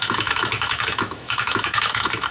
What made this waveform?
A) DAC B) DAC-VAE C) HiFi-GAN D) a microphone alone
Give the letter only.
B